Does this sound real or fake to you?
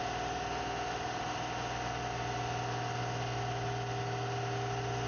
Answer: real